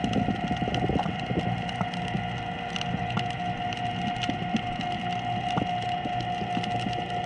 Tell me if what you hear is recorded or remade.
recorded